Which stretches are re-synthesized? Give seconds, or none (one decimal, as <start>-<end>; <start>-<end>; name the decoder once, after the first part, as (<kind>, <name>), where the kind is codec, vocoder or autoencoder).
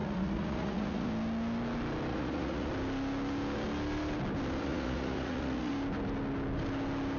0.0-1.1 (vocoder, Vocos); 2.1-2.7; 4.6-5.7